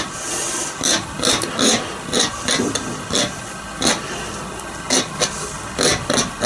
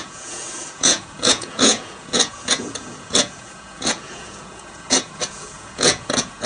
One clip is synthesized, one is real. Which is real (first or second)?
first